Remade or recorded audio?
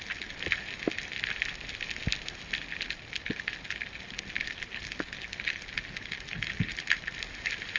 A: recorded